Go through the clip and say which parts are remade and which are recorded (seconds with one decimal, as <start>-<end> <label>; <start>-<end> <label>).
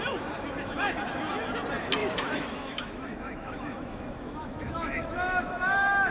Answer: 0.0-2.0 recorded; 2.0-6.1 remade